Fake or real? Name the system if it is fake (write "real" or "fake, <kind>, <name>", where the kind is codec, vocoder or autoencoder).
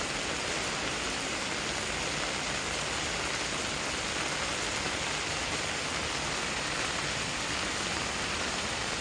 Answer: real